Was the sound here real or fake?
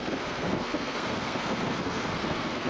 fake